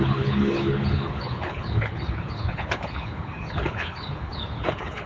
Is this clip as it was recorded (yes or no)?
no